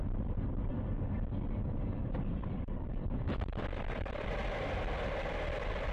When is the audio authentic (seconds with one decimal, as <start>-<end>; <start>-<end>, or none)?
none